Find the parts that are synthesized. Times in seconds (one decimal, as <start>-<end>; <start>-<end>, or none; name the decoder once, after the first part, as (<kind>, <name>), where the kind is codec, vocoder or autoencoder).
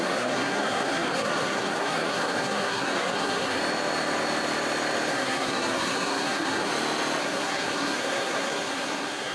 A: 0.0-3.6 (codec, SNAC); 5.1-6.7; 7.2-9.3